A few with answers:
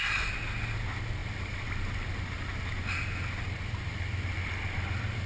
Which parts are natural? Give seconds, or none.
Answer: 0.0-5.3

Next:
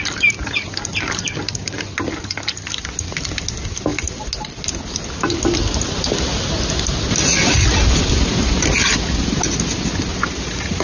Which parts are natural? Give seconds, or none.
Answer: 0.0-10.8